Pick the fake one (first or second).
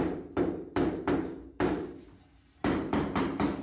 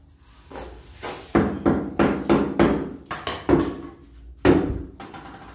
first